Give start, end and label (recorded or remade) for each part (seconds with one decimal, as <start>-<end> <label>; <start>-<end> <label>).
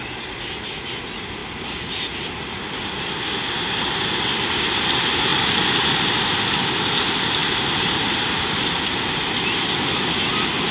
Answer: 0.0-10.7 recorded